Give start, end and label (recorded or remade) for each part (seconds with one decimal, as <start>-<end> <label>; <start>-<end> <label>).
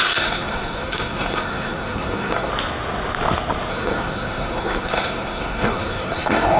0.0-2.5 remade; 2.5-3.7 recorded; 3.7-6.6 remade